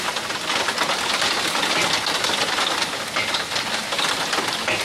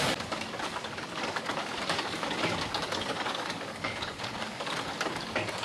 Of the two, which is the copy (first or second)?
second